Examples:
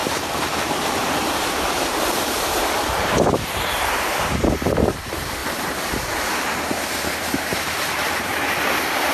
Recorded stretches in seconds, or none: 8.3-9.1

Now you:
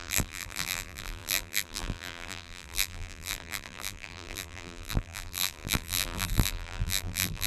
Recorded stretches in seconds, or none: none

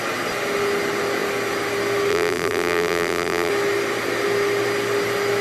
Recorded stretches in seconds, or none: 0.0-2.1; 3.5-5.4